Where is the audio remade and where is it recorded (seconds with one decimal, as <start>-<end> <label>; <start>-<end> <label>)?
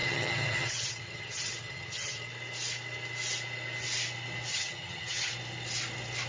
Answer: 0.0-2.3 remade; 2.3-4.5 recorded; 4.5-5.3 remade; 5.3-6.3 recorded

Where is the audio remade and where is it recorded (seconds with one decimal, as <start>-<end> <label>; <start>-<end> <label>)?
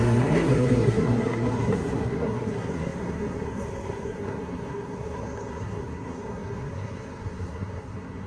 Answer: 0.0-8.3 remade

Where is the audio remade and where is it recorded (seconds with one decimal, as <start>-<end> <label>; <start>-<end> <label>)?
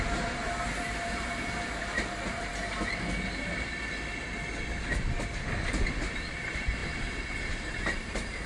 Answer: 0.0-2.5 remade; 2.5-4.8 recorded; 4.8-8.5 remade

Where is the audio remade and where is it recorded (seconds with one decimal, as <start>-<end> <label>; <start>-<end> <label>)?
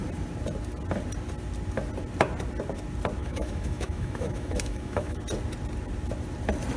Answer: 0.0-3.2 recorded; 3.2-5.2 remade; 5.2-6.8 recorded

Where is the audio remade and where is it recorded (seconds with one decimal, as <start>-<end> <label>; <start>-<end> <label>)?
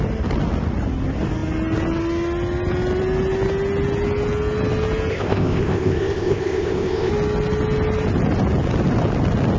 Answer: 0.0-5.1 recorded; 5.1-7.1 remade; 7.1-9.6 recorded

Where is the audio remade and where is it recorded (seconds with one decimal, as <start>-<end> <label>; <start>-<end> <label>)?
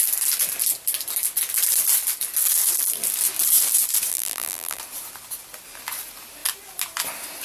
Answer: 0.0-4.1 recorded; 4.1-4.8 remade; 4.8-7.4 recorded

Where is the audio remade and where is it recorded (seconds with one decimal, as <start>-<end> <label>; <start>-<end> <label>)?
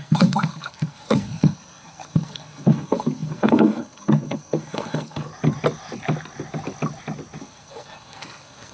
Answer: 0.0-5.3 remade; 5.3-7.4 recorded; 7.4-8.7 remade